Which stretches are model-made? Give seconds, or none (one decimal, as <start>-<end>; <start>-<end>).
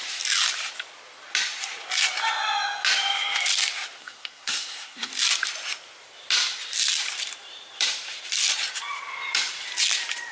4.0-5.1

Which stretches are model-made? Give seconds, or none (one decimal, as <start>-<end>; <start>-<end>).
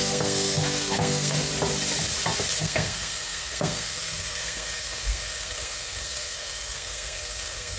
0.0-1.5; 2.6-7.8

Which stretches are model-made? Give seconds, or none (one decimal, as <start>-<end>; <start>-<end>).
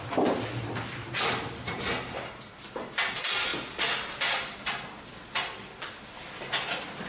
none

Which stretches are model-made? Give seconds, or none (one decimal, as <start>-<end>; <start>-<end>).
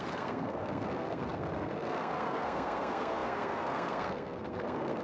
0.0-5.0